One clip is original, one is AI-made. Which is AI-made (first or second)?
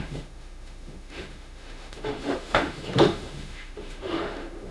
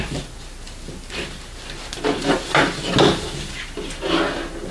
first